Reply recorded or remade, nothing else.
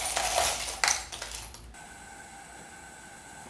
recorded